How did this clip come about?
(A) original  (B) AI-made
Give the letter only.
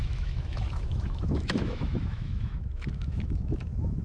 B